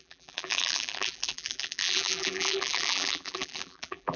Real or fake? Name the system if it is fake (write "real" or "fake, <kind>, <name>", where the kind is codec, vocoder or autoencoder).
fake, vocoder, BigVGAN v2